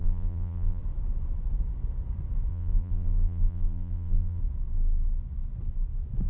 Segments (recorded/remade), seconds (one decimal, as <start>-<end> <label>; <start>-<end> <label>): 0.0-0.8 remade; 0.8-2.5 recorded; 2.5-4.4 remade; 4.4-6.3 recorded